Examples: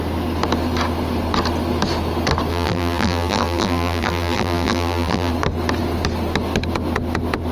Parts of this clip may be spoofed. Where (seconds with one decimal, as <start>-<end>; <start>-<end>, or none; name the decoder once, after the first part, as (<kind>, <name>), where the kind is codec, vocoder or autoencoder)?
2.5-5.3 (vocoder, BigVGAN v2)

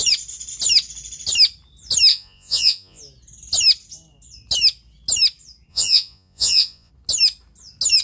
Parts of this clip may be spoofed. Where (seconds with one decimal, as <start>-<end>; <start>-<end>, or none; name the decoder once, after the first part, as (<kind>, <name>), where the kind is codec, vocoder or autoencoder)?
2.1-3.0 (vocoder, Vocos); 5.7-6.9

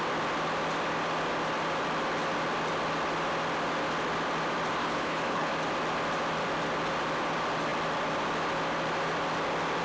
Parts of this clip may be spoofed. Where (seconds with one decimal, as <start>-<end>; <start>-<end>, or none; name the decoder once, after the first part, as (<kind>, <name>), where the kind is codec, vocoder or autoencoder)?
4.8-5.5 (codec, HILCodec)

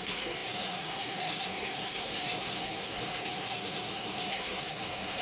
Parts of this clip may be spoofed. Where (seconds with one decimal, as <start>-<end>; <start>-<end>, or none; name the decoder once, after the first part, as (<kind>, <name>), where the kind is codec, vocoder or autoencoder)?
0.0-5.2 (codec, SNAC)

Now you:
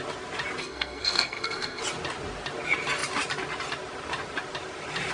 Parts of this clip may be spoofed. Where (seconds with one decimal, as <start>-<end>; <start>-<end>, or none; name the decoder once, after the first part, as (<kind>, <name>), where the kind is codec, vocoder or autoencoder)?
0.6-1.8 (codec, SNAC)